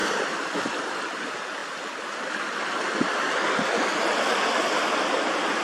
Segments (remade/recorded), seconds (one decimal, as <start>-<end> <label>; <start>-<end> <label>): 0.0-0.6 remade; 0.6-5.6 recorded